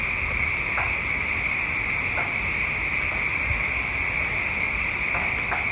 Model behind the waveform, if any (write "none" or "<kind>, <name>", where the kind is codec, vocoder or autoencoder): none